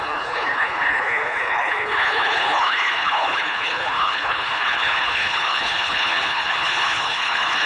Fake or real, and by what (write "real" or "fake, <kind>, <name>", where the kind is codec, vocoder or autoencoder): fake, codec, HILCodec